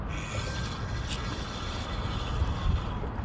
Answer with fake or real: real